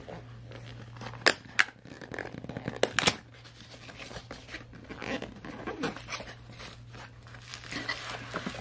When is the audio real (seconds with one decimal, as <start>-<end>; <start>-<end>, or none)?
0.0-5.7; 6.3-8.6